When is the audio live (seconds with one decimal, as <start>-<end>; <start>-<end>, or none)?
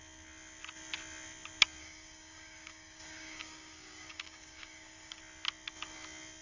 0.0-1.8; 5.2-6.4